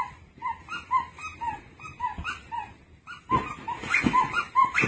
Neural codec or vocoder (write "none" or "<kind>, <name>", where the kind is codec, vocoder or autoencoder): none